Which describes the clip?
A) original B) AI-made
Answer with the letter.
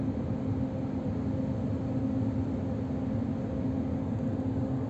A